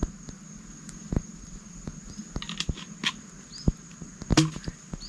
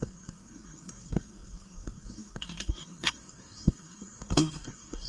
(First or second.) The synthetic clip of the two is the second